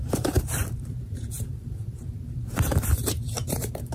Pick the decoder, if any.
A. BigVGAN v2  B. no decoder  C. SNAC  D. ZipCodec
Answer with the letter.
A